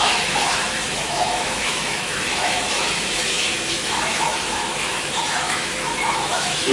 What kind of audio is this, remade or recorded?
remade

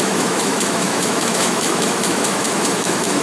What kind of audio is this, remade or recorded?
remade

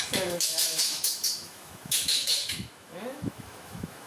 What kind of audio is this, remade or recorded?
remade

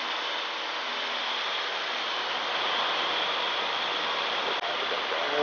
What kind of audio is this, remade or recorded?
recorded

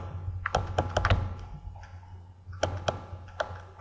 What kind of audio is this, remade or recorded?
recorded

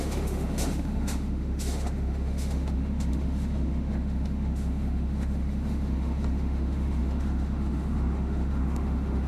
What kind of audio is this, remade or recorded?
remade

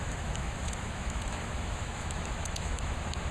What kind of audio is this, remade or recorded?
remade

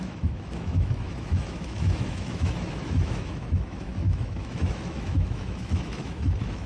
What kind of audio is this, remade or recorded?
remade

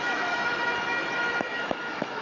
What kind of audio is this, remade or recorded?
remade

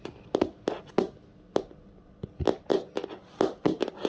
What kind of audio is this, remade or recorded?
recorded